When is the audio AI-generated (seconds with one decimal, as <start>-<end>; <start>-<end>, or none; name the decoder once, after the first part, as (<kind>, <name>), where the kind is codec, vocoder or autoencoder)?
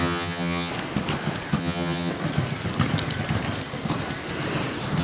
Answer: 0.0-0.7 (vocoder, HiFi-GAN); 1.6-2.1